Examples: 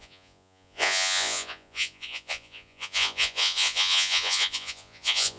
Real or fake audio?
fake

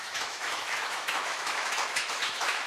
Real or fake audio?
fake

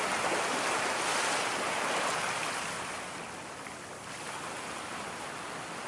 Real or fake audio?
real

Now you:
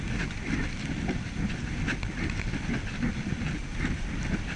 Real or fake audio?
real